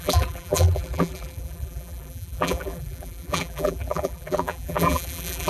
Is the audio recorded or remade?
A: remade